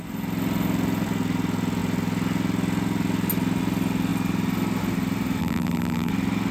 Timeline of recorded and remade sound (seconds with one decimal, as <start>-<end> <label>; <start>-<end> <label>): 0.0-5.4 recorded; 5.4-6.1 remade; 6.1-6.5 recorded